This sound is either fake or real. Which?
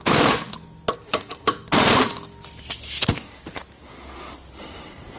fake